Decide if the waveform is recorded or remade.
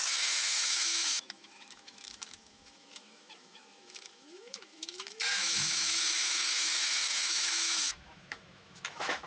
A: remade